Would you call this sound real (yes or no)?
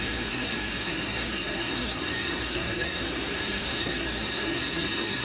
no